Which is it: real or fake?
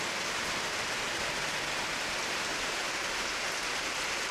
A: real